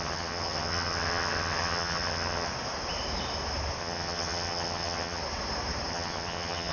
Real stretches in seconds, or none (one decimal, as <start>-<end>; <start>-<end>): 2.5-3.8; 5.2-5.9